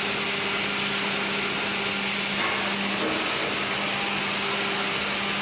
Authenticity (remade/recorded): recorded